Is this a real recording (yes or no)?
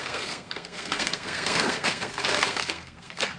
no